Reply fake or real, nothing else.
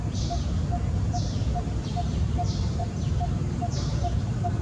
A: fake